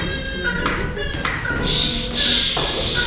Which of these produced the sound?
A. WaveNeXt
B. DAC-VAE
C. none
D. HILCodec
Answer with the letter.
C